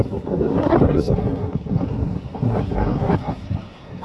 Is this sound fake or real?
fake